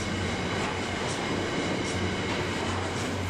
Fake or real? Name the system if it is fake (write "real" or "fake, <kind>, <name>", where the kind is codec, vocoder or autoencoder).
real